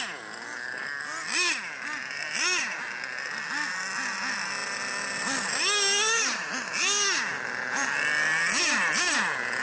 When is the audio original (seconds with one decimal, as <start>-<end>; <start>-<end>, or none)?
0.0-9.6